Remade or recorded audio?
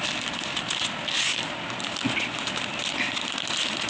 recorded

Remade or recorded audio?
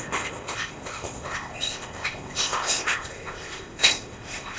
remade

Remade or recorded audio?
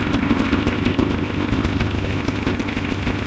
remade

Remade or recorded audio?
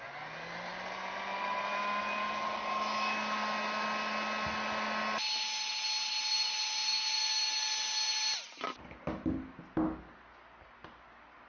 recorded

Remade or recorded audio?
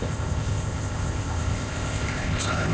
remade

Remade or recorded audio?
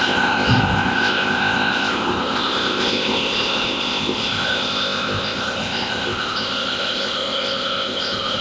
remade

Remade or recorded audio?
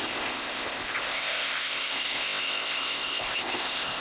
remade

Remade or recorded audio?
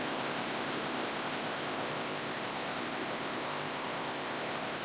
remade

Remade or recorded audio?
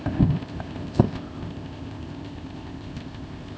remade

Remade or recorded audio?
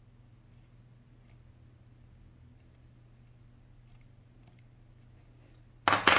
recorded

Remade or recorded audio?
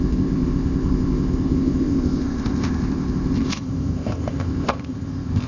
remade